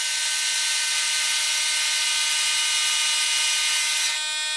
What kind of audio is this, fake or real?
real